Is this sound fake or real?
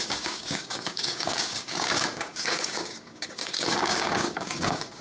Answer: fake